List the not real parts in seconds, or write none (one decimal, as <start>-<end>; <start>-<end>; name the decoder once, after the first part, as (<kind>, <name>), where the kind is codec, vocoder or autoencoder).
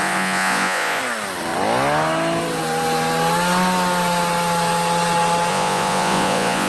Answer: 0.0-1.0 (vocoder, Vocos); 5.5-6.7